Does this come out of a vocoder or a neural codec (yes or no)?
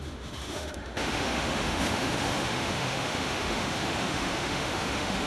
yes